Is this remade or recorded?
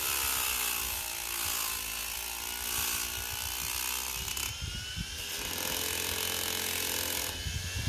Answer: recorded